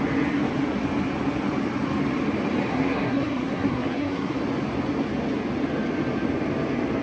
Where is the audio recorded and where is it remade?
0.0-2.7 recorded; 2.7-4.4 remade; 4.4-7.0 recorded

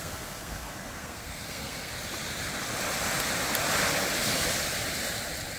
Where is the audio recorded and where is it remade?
0.0-1.9 remade; 1.9-5.6 recorded

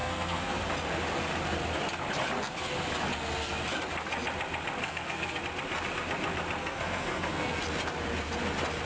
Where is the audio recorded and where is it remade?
0.0-0.6 remade; 0.6-4.8 recorded; 4.8-5.4 remade; 5.4-6.6 recorded; 6.6-7.6 remade; 7.6-8.9 recorded

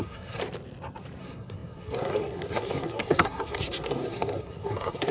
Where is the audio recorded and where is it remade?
0.0-0.4 remade; 0.4-1.2 recorded; 1.2-5.1 remade

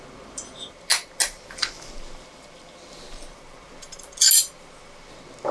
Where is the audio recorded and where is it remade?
0.0-5.5 recorded

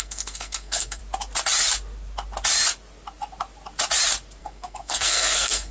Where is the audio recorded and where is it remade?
0.0-1.0 remade; 1.0-4.4 recorded; 4.4-5.7 remade

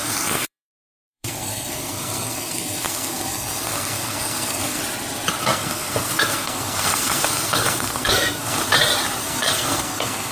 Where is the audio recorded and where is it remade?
0.0-4.8 remade; 4.8-5.4 recorded; 5.4-8.6 remade; 8.6-9.2 recorded; 9.2-10.3 remade

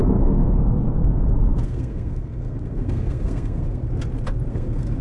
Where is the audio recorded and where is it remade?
0.0-3.8 remade; 3.8-4.5 recorded; 4.5-5.0 remade